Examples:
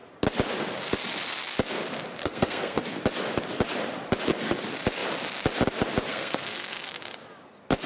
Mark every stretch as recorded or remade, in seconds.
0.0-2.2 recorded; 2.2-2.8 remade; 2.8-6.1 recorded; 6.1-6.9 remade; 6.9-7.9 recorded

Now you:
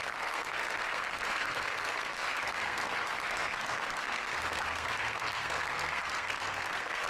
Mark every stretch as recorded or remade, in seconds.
0.0-7.1 remade

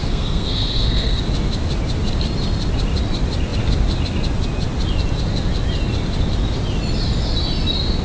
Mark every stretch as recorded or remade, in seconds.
0.0-1.2 remade; 1.2-8.0 recorded

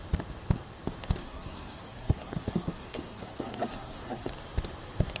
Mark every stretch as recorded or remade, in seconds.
0.0-1.2 recorded; 1.2-4.3 remade; 4.3-5.2 recorded